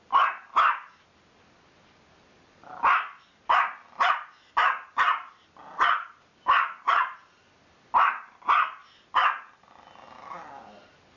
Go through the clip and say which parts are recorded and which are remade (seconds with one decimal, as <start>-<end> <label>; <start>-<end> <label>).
0.0-11.2 recorded